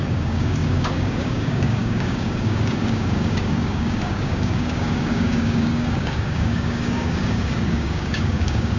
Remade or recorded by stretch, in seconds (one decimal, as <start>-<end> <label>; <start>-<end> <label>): 0.0-8.8 remade